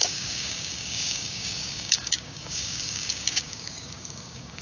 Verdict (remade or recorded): remade